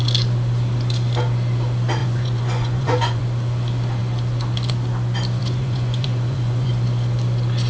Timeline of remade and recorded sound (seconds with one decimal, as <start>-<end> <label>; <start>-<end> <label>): 0.0-2.0 recorded; 2.0-3.2 remade; 3.2-5.4 recorded; 5.4-6.7 remade; 6.7-7.7 recorded

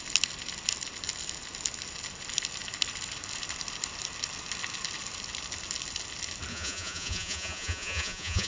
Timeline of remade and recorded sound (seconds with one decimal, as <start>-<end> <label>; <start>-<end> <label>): 0.0-6.5 recorded; 6.5-8.5 remade